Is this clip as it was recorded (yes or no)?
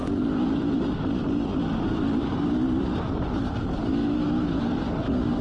yes